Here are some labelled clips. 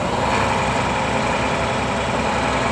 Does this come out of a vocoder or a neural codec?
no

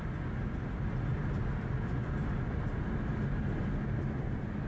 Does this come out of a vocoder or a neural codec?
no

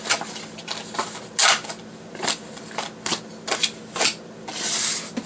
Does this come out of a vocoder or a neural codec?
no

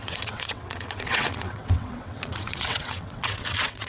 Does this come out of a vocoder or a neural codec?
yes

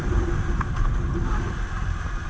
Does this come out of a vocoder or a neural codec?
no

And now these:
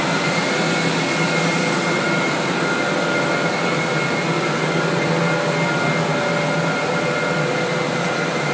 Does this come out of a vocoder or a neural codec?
no